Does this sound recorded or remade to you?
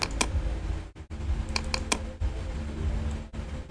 recorded